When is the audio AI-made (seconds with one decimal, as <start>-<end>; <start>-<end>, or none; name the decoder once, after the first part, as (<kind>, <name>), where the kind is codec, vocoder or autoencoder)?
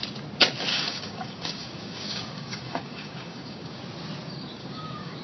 0.7-3.8 (codec, DAC); 4.6-5.2